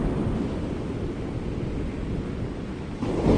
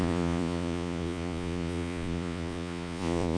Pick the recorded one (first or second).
first